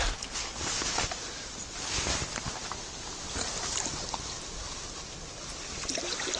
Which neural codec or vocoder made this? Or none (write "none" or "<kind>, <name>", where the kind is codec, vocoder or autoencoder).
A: none